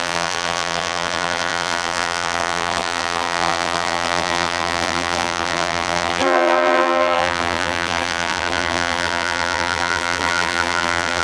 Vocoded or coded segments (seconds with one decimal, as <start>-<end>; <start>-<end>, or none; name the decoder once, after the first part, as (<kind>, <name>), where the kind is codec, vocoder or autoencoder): 0.0-11.2 (vocoder, BigVGAN v2)